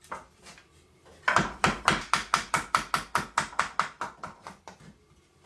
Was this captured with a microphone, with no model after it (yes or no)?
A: yes